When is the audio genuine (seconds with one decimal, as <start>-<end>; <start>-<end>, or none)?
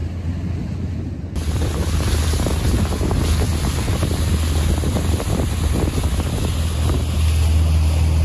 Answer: 0.0-8.2